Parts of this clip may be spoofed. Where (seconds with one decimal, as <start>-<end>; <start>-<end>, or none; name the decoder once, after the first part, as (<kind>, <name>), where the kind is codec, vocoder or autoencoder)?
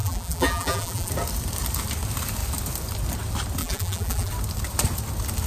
0.0-1.1 (vocoder, BigVGAN v2); 3.6-4.3